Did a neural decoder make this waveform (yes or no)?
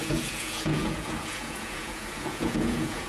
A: yes